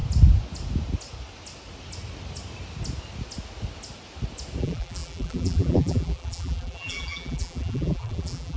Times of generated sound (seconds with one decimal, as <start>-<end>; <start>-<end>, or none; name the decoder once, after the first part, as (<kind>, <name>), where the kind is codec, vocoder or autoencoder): 4.6-8.6 (vocoder, BigVGAN v2)